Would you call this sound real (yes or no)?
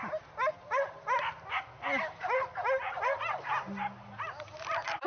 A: yes